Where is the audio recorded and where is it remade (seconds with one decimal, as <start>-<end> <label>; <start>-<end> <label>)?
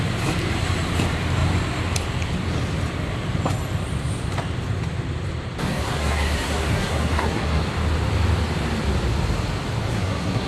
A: 0.0-5.6 recorded; 5.6-7.6 remade; 7.6-9.9 recorded; 9.9-10.5 remade